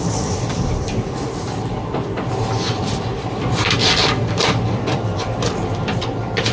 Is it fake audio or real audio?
fake